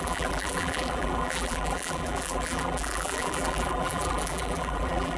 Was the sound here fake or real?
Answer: fake